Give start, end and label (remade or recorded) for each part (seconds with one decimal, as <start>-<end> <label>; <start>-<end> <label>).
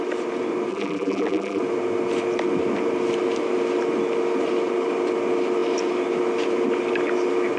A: 0.0-0.7 recorded; 0.7-1.6 remade; 1.6-7.6 recorded